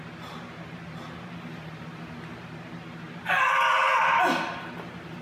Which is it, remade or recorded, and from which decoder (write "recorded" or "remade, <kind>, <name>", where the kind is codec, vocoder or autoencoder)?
recorded